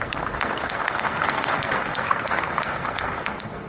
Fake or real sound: fake